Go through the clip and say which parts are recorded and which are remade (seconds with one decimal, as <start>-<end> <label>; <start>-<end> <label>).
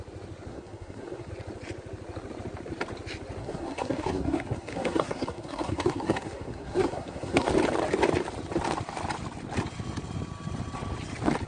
0.0-0.5 recorded; 0.5-1.3 remade; 1.3-3.4 recorded; 3.4-7.5 remade; 7.5-11.5 recorded